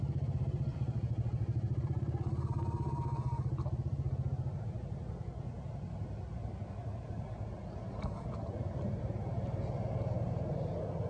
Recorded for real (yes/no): yes